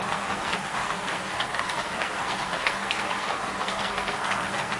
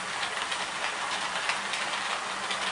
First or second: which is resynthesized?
first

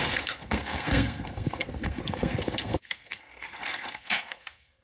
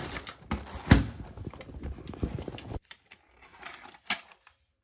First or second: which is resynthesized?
first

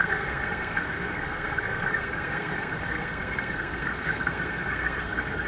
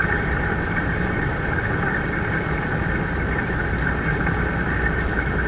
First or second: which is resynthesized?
first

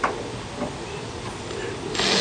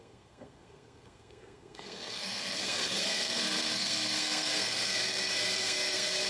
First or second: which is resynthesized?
second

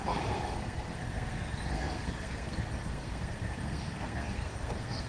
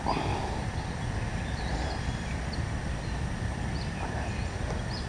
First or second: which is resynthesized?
first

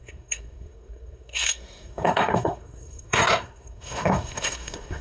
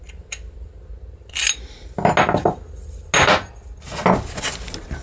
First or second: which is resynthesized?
first